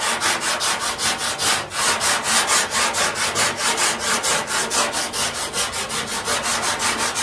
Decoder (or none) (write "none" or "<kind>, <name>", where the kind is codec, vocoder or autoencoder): none